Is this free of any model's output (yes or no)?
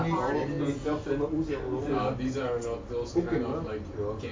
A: yes